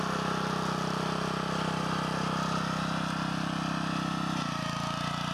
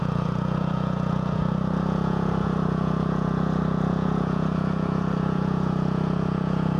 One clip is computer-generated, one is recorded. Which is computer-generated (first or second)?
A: second